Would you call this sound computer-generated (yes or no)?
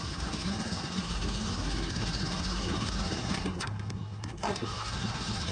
yes